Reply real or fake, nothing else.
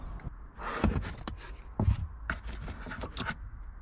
real